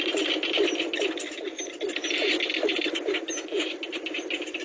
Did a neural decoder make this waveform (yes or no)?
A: no